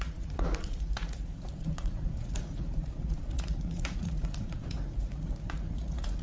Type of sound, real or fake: fake